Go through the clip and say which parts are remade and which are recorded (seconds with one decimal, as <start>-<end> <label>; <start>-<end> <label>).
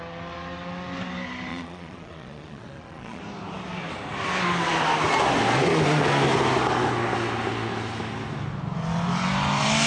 0.0-1.5 recorded; 1.5-3.2 remade; 3.2-9.9 recorded